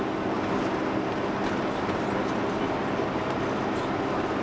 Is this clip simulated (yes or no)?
no